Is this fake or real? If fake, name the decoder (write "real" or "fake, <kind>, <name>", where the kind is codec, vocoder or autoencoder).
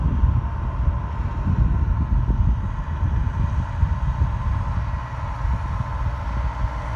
real